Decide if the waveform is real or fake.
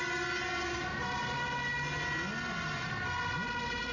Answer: real